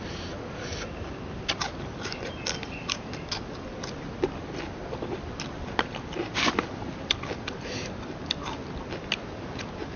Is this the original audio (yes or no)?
yes